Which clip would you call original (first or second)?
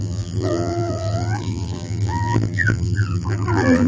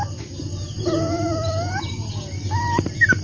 second